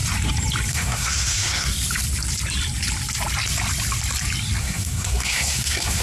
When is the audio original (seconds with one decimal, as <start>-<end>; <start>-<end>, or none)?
0.0-0.7; 1.7-4.6